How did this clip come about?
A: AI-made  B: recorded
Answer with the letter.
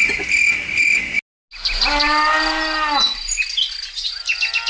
B